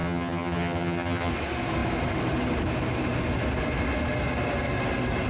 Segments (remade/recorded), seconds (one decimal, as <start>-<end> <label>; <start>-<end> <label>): 0.0-1.3 remade; 1.3-5.3 recorded